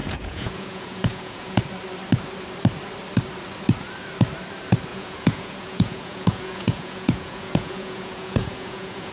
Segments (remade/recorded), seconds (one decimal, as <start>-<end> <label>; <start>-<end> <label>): 0.0-1.6 remade; 1.6-4.9 recorded; 4.9-9.1 remade